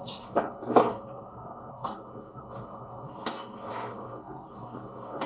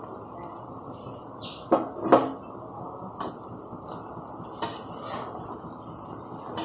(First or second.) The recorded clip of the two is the second